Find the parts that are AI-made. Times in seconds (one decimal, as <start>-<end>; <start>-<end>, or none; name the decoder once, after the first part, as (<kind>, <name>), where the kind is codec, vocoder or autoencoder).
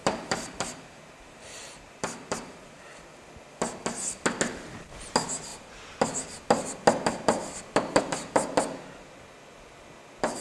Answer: 0.0-3.0 (vocoder, BigVGAN v2)